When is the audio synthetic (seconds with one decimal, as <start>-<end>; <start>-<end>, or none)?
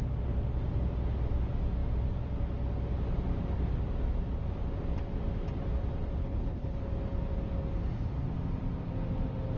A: 6.2-6.8